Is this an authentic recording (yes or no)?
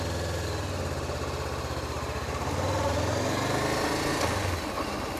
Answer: yes